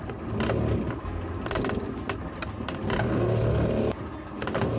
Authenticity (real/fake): real